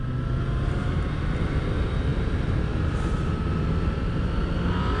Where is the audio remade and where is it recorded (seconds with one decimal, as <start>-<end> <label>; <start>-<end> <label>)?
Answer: 0.0-5.0 recorded